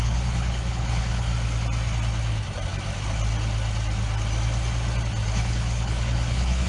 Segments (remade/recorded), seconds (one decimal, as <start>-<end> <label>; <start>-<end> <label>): 0.0-1.3 remade; 1.3-5.3 recorded; 5.3-6.7 remade